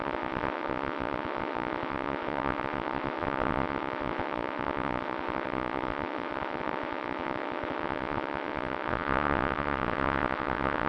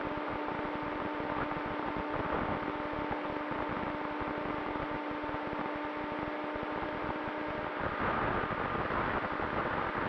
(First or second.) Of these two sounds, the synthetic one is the first